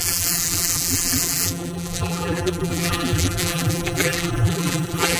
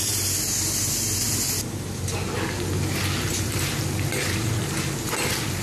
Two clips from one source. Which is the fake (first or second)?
first